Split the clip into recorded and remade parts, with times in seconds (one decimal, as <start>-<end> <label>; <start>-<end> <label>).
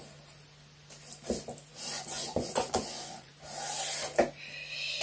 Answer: 0.0-1.7 recorded; 1.7-3.3 remade; 3.3-5.0 recorded